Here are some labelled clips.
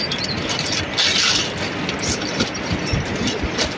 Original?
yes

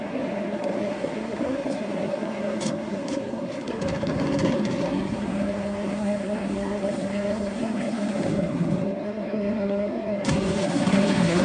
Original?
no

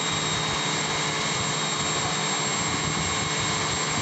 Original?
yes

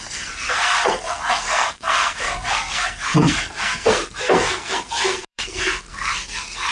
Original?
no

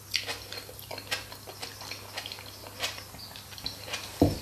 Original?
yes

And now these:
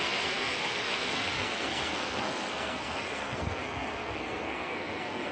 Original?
no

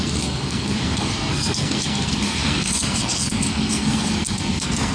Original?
no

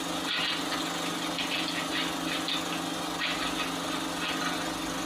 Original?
yes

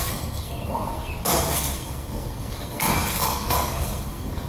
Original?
no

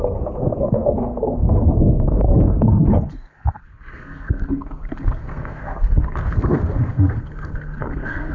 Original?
no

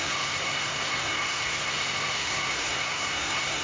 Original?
no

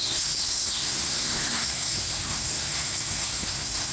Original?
no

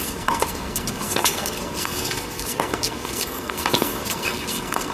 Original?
no